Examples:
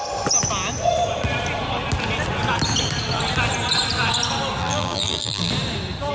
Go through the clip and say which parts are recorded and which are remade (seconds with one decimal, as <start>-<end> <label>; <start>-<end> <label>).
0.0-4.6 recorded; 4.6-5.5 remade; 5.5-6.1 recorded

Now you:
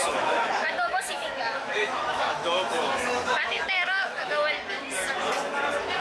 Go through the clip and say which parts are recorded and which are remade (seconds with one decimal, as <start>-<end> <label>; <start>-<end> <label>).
0.0-4.4 remade; 4.4-6.0 recorded

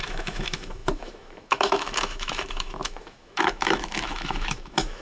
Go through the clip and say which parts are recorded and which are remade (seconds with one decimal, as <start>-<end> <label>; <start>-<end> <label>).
0.0-5.0 remade

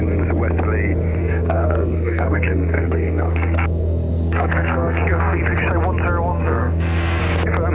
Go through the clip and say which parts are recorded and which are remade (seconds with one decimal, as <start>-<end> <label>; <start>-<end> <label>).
0.0-1.2 recorded; 1.2-5.4 remade; 5.4-6.3 recorded; 6.3-7.2 remade; 7.2-7.7 recorded

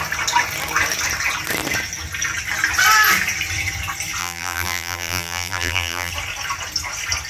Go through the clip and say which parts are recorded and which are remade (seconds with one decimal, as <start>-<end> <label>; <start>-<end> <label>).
0.0-4.2 recorded; 4.2-6.1 remade; 6.1-7.3 recorded

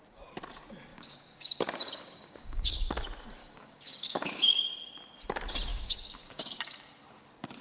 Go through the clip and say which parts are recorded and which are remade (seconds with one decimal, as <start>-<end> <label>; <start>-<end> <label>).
0.0-0.9 recorded; 0.9-3.0 remade; 3.0-3.4 recorded; 3.4-4.6 remade; 4.6-5.7 recorded; 5.7-6.6 remade; 6.6-7.6 recorded

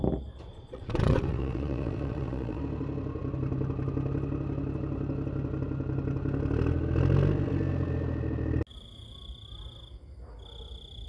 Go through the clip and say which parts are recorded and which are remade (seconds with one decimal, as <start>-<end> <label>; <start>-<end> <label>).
0.0-0.5 recorded; 0.5-2.6 remade; 2.6-11.1 recorded